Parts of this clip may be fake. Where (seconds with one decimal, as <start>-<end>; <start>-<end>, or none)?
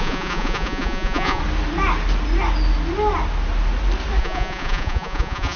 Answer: 0.0-1.4; 4.2-5.6